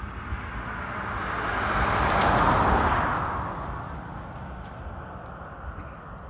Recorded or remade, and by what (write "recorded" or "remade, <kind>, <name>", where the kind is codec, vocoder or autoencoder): recorded